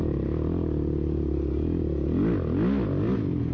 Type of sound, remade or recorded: recorded